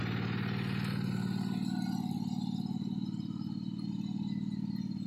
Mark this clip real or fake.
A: real